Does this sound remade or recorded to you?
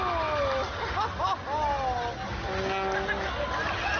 recorded